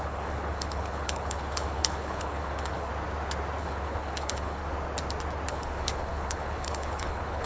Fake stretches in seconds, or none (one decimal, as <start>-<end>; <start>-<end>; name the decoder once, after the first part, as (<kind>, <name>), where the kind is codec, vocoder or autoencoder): 0.0-2.9 (codec, HILCodec); 3.6-4.6; 5.5-7.5